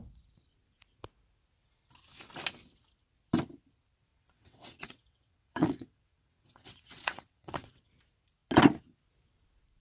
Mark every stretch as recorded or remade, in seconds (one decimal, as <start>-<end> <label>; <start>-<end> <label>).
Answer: 0.0-4.1 recorded; 4.1-7.9 remade; 7.9-9.8 recorded